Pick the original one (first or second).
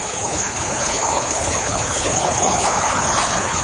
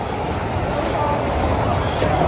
second